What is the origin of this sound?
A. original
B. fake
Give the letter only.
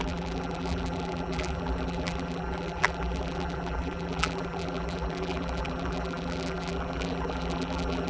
B